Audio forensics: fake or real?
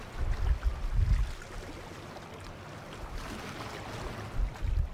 real